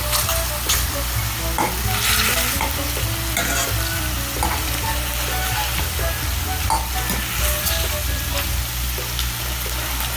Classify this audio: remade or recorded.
recorded